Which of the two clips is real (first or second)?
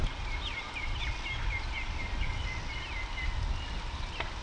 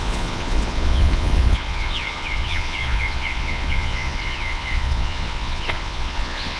first